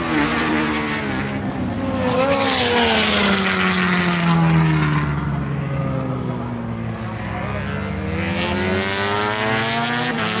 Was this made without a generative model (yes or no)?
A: yes